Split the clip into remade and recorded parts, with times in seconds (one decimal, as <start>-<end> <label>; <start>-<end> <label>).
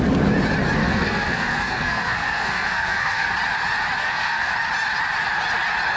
0.0-0.8 recorded; 0.8-3.3 remade; 3.3-4.0 recorded; 4.0-4.5 remade; 4.5-6.0 recorded